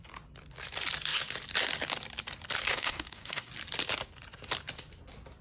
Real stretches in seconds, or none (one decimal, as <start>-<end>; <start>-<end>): 0.0-2.7; 3.5-5.4